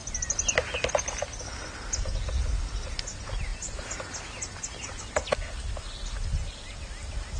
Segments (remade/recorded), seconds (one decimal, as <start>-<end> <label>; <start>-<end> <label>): 0.0-7.4 recorded